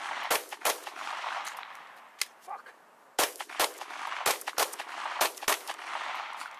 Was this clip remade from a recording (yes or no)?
no